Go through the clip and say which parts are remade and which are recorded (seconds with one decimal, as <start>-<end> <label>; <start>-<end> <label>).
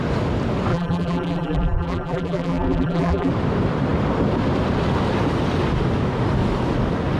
0.0-0.7 recorded; 0.7-3.3 remade; 3.3-7.2 recorded